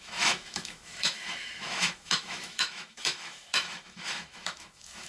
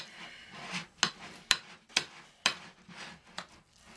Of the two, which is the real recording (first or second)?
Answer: second